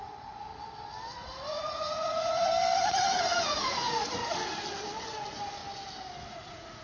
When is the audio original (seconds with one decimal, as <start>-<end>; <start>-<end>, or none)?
0.5-1.5; 2.5-3.2; 4.2-5.0; 5.6-6.3